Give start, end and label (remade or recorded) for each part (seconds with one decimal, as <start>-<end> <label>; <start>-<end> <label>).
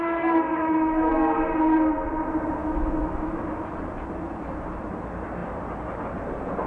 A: 0.0-0.5 recorded; 0.5-1.1 remade; 1.1-2.6 recorded; 2.6-3.4 remade; 3.4-6.7 recorded